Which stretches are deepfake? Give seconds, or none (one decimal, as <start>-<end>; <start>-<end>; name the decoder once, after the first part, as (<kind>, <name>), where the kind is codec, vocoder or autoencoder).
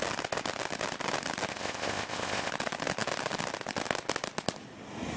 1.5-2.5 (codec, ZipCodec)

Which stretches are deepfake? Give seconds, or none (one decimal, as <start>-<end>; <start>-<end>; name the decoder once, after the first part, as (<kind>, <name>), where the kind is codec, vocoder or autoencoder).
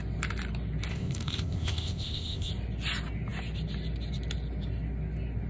0.9-2.5 (codec, ZipCodec)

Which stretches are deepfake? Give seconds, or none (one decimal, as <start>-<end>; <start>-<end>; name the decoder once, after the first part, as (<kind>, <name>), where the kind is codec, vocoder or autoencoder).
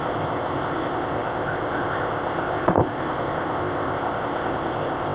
0.0-5.1 (codec, ZipCodec)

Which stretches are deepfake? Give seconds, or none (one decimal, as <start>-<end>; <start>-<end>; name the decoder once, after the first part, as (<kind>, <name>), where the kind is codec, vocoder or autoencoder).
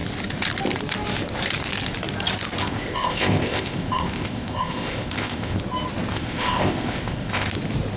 2.6-5.6 (codec, ZipCodec); 6.1-7.5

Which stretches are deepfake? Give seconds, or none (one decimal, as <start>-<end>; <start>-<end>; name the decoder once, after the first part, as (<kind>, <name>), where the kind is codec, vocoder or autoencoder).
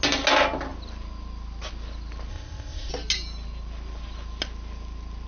2.3-2.9 (codec, ZipCodec)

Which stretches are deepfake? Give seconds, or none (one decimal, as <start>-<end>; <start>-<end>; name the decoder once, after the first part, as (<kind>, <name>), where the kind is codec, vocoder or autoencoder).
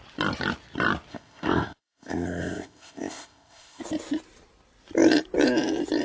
1.1-3.8 (codec, ZipCodec)